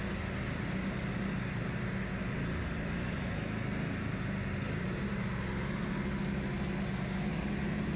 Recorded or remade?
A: recorded